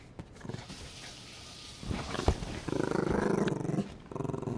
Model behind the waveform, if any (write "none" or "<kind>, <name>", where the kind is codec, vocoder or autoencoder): none